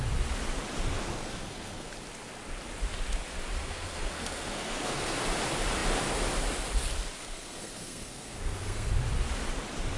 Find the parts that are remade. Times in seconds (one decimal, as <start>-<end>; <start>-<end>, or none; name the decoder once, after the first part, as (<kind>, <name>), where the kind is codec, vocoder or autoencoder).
1.2-1.9 (codec, SNAC); 3.6-5.2; 7.2-8.9